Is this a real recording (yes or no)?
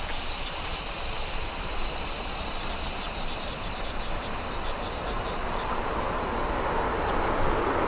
yes